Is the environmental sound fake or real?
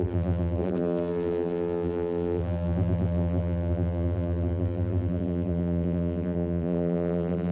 fake